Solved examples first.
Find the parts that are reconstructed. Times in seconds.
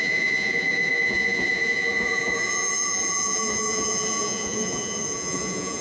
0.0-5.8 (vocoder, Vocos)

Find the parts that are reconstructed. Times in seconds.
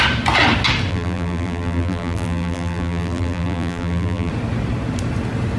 0.9-4.3 (vocoder, BigVGAN v2)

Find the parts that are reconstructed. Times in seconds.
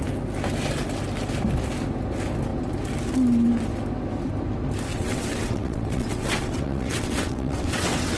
4.9-8.2 (vocoder, WaveNeXt)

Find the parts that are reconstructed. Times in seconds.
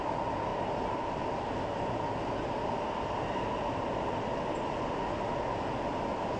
none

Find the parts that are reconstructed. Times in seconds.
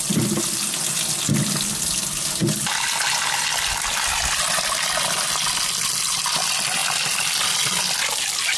none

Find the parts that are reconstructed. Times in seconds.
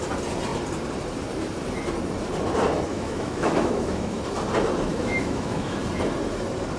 2.9-4.2 (autoencoder, DAC-VAE); 4.9-5.8